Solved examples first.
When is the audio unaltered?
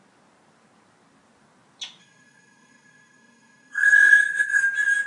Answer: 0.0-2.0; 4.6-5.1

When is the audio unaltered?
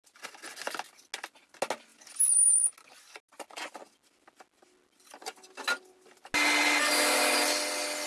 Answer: 0.0-8.1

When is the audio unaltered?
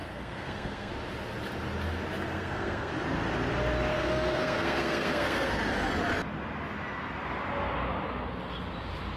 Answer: 0.9-2.3; 2.9-3.9; 5.5-9.2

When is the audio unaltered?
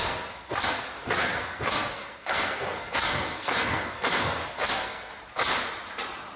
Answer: 5.1-6.4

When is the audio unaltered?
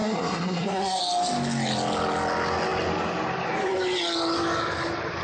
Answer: 1.0-5.2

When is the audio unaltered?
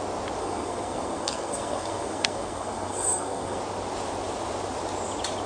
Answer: 0.0-0.4; 3.6-5.5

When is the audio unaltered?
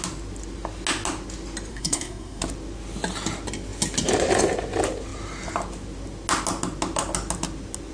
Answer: 0.0-1.7; 2.4-7.9